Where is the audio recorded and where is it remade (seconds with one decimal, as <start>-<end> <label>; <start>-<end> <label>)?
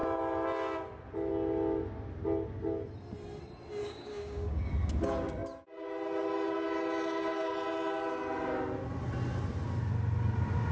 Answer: 0.0-3.8 recorded; 3.8-4.7 remade; 4.7-10.7 recorded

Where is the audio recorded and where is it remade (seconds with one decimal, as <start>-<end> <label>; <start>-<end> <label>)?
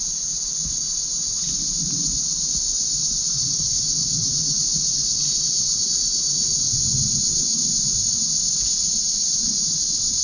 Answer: 0.0-7.5 recorded; 7.5-8.2 remade; 8.2-10.2 recorded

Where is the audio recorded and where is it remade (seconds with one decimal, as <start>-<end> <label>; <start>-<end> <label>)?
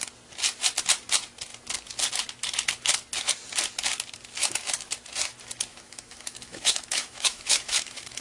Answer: 0.0-4.4 recorded; 4.4-4.9 remade; 4.9-5.7 recorded; 5.7-8.2 remade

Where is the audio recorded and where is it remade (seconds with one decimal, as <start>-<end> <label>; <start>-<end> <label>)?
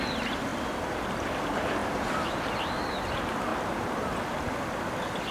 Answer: 0.0-1.8 recorded; 1.8-2.5 remade; 2.5-5.3 recorded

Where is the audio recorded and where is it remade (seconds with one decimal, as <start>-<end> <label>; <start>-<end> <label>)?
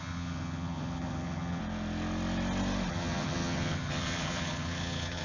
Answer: 0.0-1.6 remade; 1.6-2.9 recorded; 2.9-5.2 remade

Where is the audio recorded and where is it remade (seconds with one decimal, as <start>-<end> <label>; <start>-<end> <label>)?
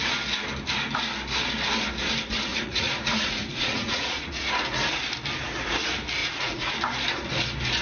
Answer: 0.0-2.5 recorded; 2.5-4.5 remade; 4.5-6.2 recorded; 6.2-6.7 remade; 6.7-7.8 recorded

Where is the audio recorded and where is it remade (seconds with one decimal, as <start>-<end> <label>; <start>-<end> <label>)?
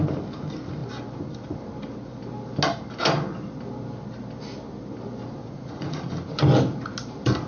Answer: 0.0-5.4 recorded; 5.4-6.1 remade; 6.1-7.5 recorded